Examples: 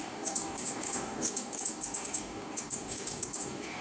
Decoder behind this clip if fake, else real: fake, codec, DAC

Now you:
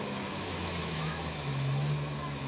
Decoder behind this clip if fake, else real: fake, autoencoder, DAC-VAE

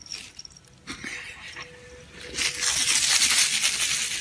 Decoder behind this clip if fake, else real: real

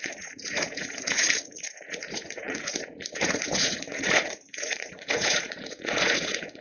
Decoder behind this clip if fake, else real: fake, vocoder, Vocos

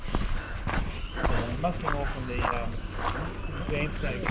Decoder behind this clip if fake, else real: real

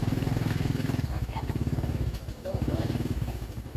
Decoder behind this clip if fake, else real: fake, codec, DAC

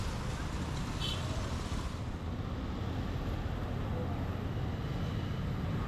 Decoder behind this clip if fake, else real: real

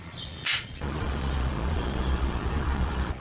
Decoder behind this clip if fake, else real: fake, vocoder, Vocos